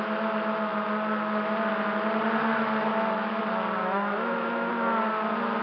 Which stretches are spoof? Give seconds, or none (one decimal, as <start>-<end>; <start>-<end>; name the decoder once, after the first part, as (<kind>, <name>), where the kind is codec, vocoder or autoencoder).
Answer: 2.9-3.4 (autoencoder, DAC-VAE); 3.8-4.7